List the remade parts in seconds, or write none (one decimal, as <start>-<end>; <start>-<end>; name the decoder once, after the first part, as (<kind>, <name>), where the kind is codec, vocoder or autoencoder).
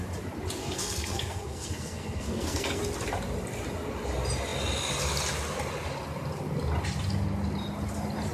0.6-2.8 (codec, SNAC)